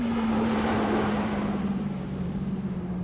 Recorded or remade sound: remade